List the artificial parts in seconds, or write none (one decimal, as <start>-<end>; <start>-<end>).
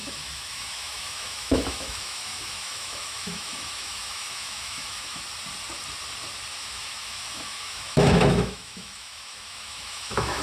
0.0-5.2; 6.5-10.4